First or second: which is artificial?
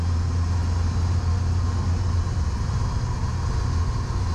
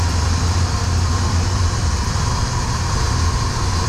second